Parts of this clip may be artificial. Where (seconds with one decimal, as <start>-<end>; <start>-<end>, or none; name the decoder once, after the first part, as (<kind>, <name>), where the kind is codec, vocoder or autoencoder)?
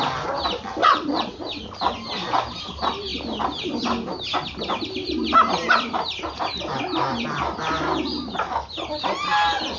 0.8-1.6 (vocoder, WaveNeXt)